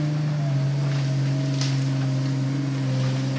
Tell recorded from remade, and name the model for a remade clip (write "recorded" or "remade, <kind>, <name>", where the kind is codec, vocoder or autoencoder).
recorded